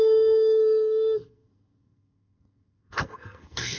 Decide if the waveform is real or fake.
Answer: fake